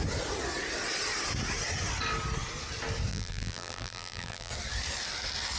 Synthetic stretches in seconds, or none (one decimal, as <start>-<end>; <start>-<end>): 3.1-4.5